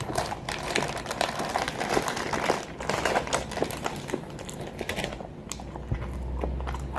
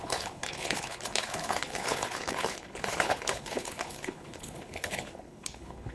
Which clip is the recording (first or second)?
first